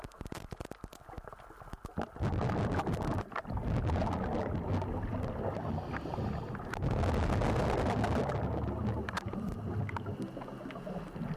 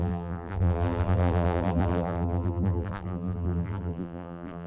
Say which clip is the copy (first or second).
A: second